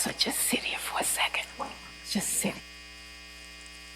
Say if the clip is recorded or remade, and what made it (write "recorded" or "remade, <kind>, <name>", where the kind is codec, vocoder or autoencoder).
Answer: recorded